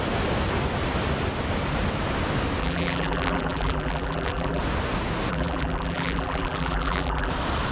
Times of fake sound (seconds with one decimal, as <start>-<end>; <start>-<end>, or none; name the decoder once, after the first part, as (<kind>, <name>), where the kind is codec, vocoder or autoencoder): 2.6-4.6 (vocoder, BigVGAN v2); 5.3-7.3